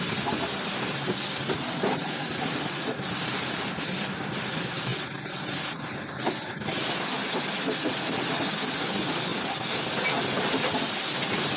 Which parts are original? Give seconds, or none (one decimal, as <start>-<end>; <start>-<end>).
0.0-11.6